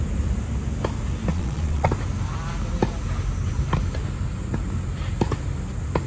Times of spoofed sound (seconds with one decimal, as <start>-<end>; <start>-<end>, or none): 1.3-1.9

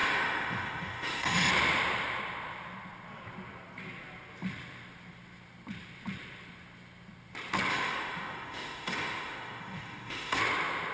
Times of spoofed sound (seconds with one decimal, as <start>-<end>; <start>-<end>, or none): 0.0-1.5; 7.7-10.4

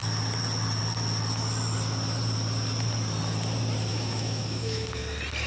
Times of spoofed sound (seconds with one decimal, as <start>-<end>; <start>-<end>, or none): 3.9-5.0

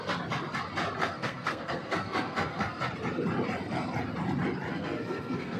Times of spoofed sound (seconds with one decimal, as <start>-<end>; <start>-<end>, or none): 1.0-2.8; 4.7-5.6

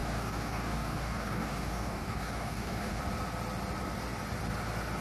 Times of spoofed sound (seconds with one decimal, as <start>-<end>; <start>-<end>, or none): 0.0-3.0

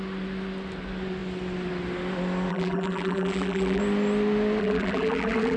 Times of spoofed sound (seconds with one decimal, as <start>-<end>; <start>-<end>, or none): 2.5-3.8; 4.6-5.6

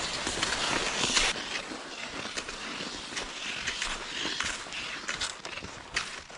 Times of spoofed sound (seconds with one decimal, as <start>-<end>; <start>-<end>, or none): none

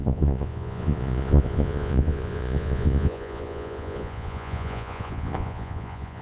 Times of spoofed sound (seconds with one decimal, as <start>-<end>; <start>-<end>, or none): 0.0-6.2